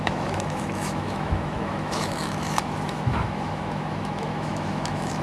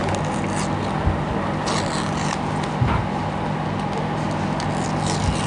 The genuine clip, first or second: second